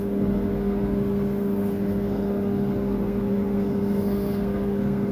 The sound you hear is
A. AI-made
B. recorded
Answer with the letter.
A